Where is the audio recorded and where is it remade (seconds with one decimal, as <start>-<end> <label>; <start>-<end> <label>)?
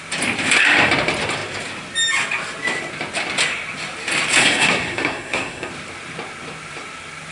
0.0-4.4 recorded; 4.4-5.7 remade; 5.7-7.3 recorded